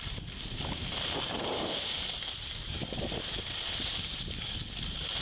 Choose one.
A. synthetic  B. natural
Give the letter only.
B